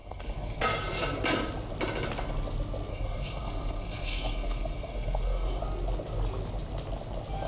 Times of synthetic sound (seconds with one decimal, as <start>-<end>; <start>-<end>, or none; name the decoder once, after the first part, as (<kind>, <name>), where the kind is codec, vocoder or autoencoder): 0.0-0.6 (codec, SNAC); 2.9-5.6